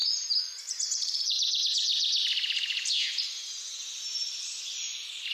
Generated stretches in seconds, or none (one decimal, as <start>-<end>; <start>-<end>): 0.6-1.9